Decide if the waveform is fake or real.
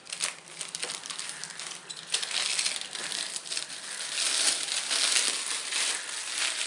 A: real